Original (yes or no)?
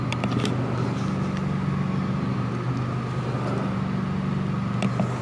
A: yes